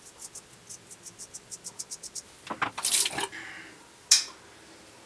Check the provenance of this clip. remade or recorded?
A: recorded